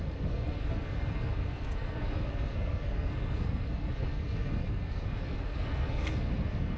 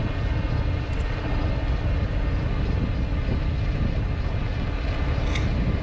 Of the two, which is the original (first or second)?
second